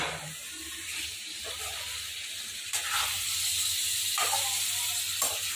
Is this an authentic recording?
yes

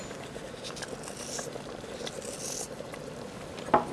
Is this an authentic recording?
yes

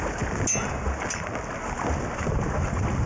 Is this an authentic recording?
yes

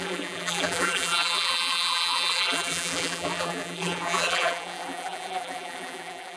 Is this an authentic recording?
no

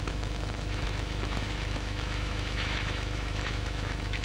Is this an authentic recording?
no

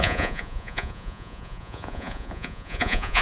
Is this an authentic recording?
no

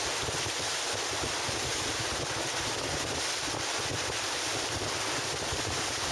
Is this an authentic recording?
yes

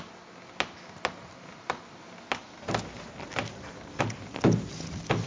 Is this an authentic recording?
yes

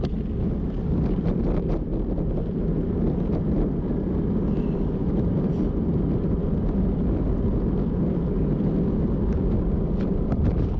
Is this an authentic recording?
yes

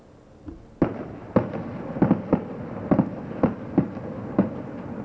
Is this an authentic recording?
yes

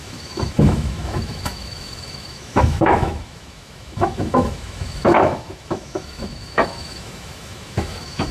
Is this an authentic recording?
no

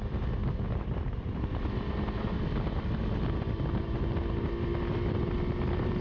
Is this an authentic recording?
yes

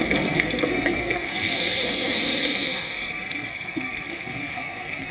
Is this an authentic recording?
no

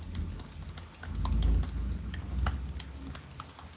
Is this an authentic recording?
yes